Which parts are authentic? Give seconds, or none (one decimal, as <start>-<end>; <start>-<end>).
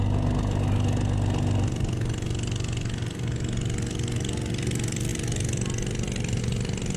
0.0-7.0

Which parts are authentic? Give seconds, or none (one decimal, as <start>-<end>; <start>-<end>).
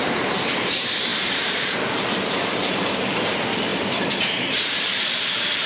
none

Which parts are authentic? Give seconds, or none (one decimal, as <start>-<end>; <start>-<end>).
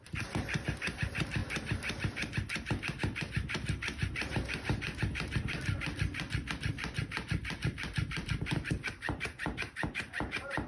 0.0-10.7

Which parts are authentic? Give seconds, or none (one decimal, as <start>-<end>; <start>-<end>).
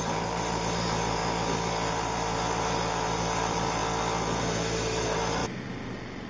1.2-1.9; 3.8-4.4; 5.4-6.3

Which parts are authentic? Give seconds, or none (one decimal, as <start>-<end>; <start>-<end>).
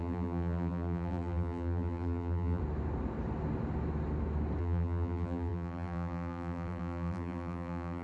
2.6-4.6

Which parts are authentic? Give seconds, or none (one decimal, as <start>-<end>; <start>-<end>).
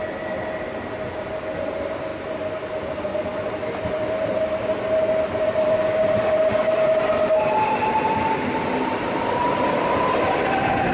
0.0-10.9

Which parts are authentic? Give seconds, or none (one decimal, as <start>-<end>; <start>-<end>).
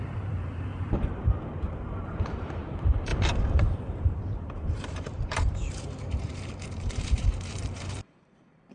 none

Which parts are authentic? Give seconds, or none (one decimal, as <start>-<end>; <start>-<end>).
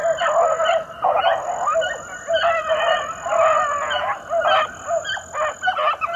0.0-6.2